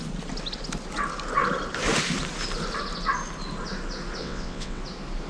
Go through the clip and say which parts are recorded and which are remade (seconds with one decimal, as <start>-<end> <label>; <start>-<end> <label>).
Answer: 0.0-4.2 recorded; 4.2-4.8 remade; 4.8-5.3 recorded